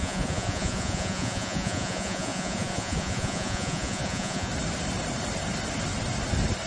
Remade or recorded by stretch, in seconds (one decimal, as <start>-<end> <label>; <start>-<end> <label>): 0.0-4.5 remade; 4.5-6.7 recorded